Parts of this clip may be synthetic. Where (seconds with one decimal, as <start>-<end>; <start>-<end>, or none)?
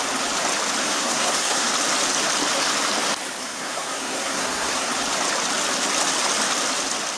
0.8-1.7; 3.4-4.9